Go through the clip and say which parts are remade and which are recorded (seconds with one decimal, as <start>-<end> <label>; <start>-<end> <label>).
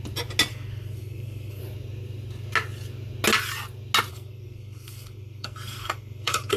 0.0-0.5 recorded; 0.5-1.6 remade; 1.6-4.1 recorded; 4.1-6.6 remade